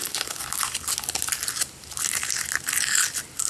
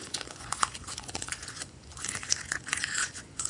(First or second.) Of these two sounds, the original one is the first